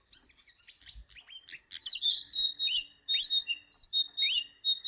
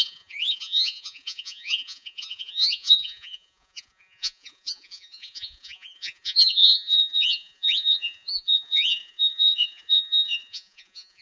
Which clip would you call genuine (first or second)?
first